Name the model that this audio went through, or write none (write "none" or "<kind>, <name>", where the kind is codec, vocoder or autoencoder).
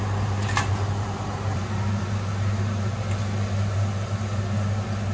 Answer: none